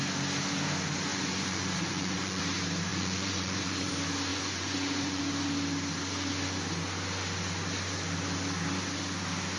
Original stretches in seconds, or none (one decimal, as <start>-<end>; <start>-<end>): 0.0-1.1; 2.4-2.9; 3.9-4.3; 5.2-9.6